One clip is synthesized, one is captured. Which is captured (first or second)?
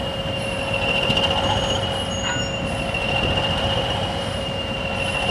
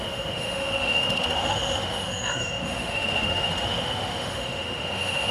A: first